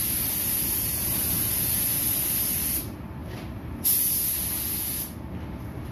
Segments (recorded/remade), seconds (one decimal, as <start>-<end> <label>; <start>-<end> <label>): 0.0-0.6 recorded; 0.6-1.6 remade; 1.6-3.2 recorded; 3.2-3.7 remade; 3.7-5.9 recorded